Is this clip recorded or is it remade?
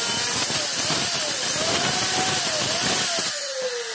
recorded